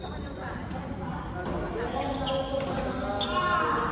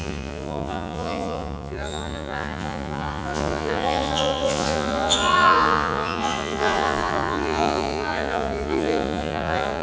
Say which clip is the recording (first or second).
first